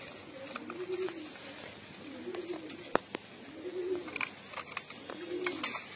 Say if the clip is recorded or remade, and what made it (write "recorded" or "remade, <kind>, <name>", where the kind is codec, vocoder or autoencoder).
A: recorded